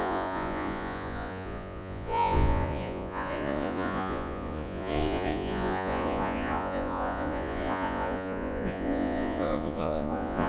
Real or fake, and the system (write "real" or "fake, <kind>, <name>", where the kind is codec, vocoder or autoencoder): fake, vocoder, Vocos